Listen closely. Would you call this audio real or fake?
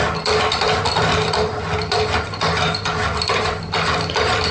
real